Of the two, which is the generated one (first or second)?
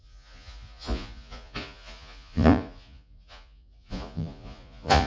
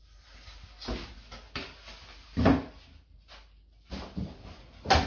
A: first